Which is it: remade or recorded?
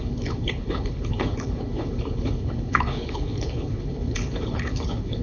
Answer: remade